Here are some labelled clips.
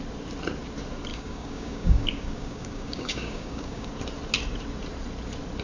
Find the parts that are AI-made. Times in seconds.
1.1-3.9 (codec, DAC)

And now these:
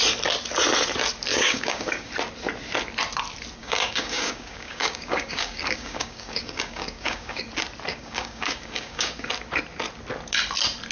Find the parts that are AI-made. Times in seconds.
1.3-2.1 (codec, DAC); 3.6-7.4; 7.9-9.3